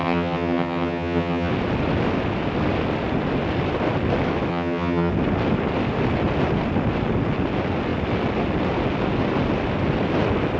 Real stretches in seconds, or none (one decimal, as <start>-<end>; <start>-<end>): 1.5-4.5; 5.1-10.6